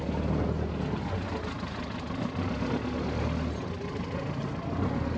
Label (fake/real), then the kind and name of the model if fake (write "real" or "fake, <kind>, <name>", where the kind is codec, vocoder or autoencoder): real